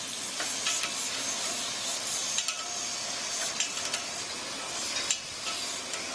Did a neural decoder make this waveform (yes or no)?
no